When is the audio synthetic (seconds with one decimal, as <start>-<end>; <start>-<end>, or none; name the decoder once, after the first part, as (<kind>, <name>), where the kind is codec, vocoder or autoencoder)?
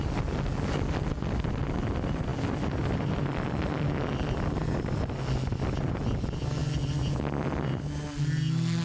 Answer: none